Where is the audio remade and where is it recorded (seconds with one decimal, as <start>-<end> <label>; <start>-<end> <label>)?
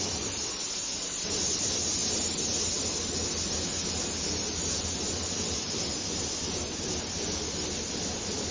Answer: 0.0-8.5 recorded